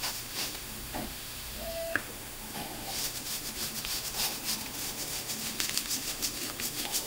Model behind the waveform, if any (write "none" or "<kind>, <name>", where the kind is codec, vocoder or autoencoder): autoencoder, DAC-VAE